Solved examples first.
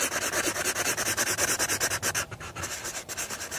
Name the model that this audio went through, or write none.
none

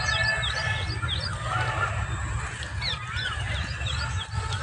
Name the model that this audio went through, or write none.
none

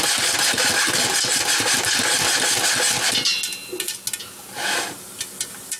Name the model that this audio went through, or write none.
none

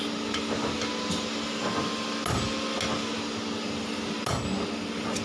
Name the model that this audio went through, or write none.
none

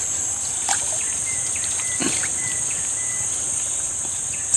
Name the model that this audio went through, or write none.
none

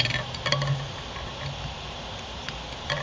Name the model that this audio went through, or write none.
none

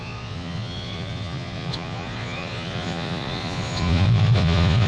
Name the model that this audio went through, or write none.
vocoder, Vocos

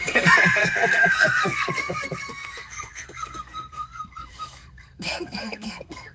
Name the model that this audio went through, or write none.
codec, SNAC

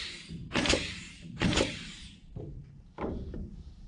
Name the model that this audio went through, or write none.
vocoder, BigVGAN v2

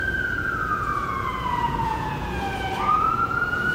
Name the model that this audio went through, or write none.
vocoder, Vocos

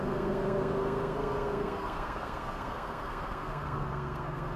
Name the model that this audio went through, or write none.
codec, SNAC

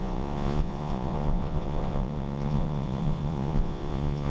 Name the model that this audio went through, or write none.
vocoder, Vocos